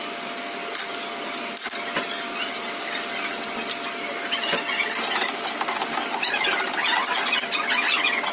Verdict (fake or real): real